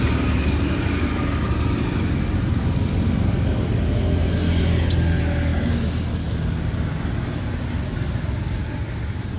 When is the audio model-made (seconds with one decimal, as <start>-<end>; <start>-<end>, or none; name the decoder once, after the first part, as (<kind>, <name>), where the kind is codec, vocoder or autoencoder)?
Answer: none